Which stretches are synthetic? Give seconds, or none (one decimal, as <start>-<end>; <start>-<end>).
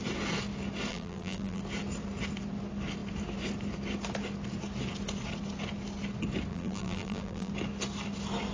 0.9-1.6; 6.5-7.5